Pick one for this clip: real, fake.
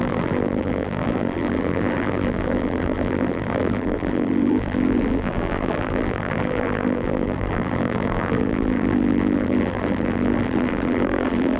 fake